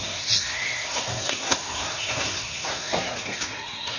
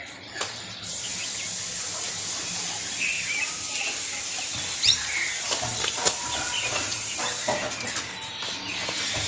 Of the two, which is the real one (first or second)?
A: second